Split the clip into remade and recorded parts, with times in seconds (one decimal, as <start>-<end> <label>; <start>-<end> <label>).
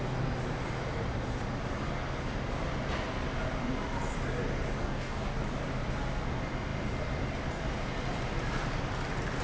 0.0-4.8 recorded; 4.8-5.4 remade; 5.4-9.4 recorded